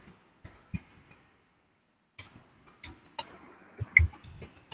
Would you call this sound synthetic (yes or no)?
no